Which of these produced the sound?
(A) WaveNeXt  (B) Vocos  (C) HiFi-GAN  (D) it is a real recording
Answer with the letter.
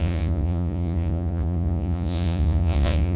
B